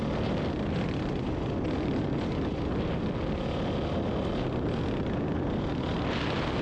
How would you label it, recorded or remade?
recorded